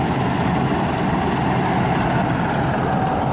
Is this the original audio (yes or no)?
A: yes